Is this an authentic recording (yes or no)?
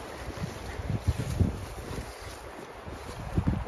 yes